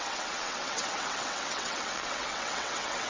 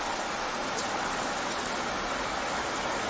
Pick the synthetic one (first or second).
first